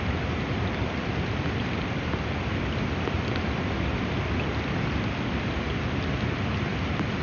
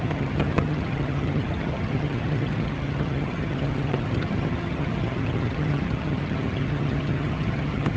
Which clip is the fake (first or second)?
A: second